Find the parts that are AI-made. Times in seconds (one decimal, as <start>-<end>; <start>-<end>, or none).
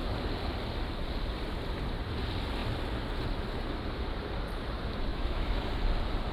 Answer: 5.1-5.7